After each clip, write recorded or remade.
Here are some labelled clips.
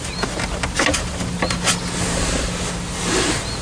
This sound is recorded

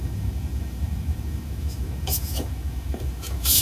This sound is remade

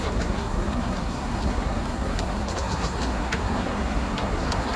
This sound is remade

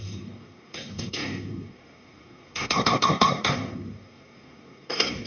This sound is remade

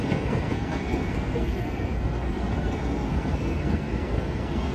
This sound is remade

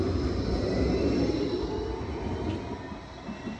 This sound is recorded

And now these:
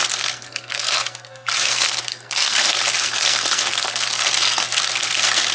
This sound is remade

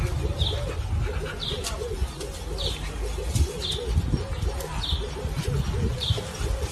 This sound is recorded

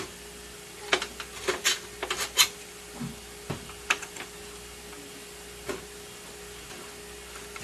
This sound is recorded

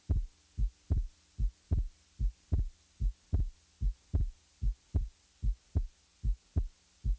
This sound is recorded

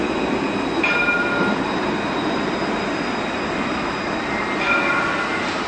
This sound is recorded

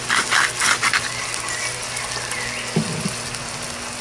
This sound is recorded